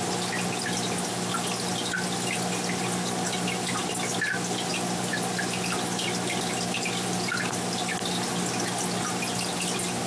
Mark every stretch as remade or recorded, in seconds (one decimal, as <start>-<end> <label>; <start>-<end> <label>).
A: 0.0-10.1 recorded